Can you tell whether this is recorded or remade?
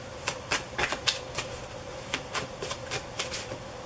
remade